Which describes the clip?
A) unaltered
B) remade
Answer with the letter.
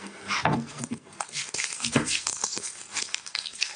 B